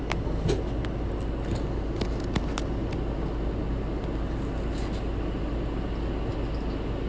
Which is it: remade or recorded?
recorded